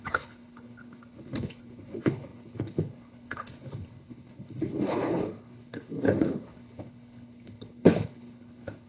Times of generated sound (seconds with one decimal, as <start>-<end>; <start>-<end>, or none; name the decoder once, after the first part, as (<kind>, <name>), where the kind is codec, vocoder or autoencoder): 0.0-8.9 (codec, HILCodec)